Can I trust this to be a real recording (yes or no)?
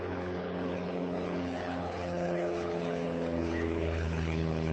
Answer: no